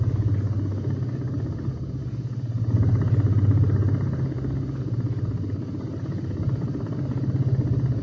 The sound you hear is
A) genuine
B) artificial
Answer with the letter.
A